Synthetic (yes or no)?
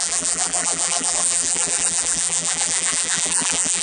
yes